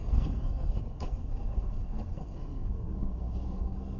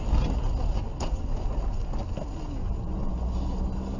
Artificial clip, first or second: first